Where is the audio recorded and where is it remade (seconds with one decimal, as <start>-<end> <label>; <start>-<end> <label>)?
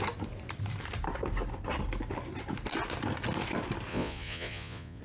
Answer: 0.0-3.9 recorded; 3.9-5.0 remade